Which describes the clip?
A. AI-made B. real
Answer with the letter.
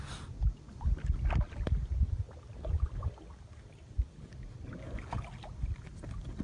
B